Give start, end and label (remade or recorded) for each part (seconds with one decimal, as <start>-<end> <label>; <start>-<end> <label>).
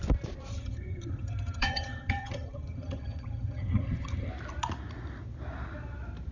0.0-0.5 recorded; 0.5-4.3 remade; 4.3-6.3 recorded